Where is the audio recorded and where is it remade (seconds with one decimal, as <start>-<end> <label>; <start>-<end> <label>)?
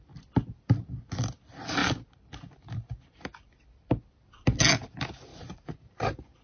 0.0-5.3 recorded; 5.3-6.4 remade